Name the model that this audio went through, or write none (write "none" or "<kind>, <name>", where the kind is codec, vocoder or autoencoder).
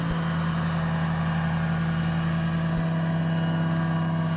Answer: none